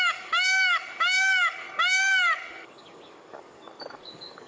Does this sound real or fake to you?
fake